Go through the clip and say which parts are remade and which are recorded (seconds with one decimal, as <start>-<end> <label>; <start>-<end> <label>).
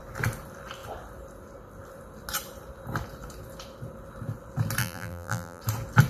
0.0-4.8 recorded; 4.8-5.6 remade; 5.6-6.1 recorded